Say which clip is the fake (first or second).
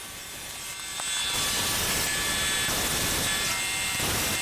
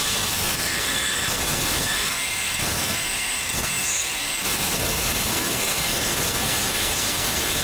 second